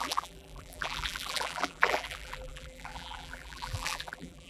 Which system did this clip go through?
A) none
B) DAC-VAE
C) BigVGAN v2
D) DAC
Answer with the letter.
C